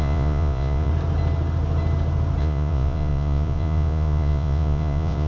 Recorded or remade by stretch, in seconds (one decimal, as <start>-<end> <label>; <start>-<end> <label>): 0.0-0.9 remade; 0.9-2.4 recorded; 2.4-5.3 remade